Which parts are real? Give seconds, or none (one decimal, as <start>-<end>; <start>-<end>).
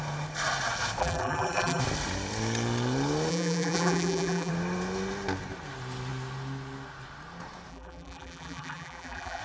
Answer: 0.0-1.0; 1.8-3.3; 4.5-7.7